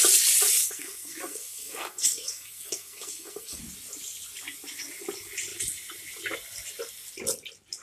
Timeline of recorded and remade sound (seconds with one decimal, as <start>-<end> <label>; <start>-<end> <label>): 0.0-0.6 recorded; 0.6-3.6 remade; 3.6-7.8 recorded